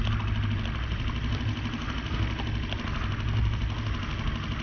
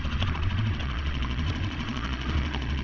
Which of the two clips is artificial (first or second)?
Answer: second